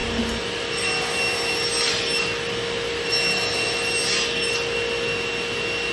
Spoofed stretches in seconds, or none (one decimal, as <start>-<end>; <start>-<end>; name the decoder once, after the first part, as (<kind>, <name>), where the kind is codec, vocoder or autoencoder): none